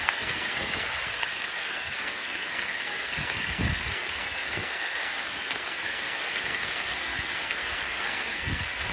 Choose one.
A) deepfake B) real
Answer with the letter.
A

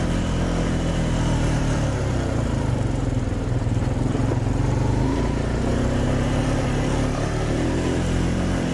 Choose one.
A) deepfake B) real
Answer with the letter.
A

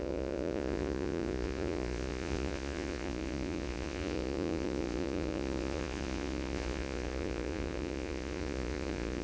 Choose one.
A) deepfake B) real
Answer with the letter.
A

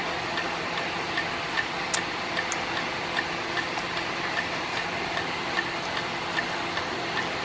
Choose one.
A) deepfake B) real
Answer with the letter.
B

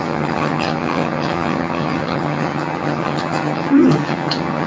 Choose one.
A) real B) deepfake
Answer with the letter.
B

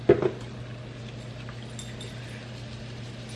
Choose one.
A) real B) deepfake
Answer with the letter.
A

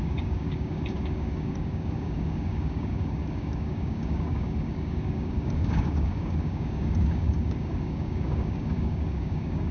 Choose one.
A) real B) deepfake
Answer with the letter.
B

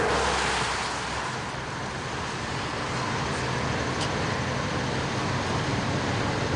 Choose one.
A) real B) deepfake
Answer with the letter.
A